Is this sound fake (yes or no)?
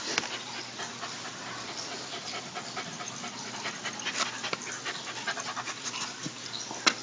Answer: no